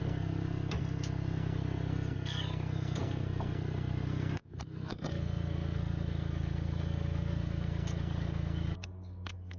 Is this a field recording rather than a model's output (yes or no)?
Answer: no